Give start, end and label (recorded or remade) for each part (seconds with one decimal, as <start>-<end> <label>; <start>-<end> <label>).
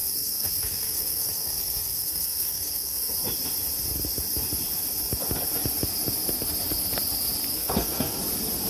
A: 0.0-3.1 remade; 3.1-7.5 recorded; 7.5-8.2 remade; 8.2-8.7 recorded